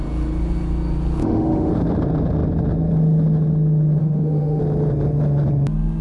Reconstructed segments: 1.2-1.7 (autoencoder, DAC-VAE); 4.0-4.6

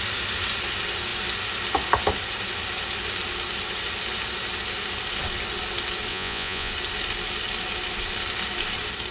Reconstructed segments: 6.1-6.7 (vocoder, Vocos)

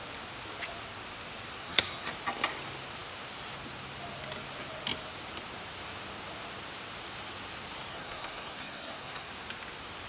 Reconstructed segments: 1.5-2.1 (codec, SNAC); 7.9-9.3

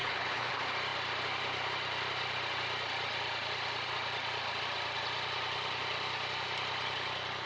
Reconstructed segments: 0.0-0.5 (codec, HILCodec)

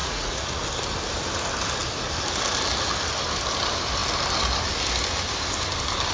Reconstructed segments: 0.0-0.6 (vocoder, Vocos)

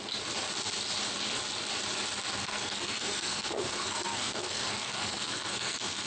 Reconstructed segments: 2.4-6.1 (codec, SNAC)

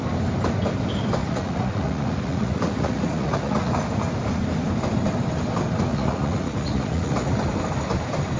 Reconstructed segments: 1.2-3.7 (vocoder, Vocos); 5.9-7.4

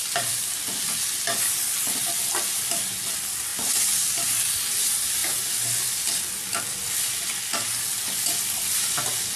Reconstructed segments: 0.0-0.8 (vocoder, BigVGAN v2)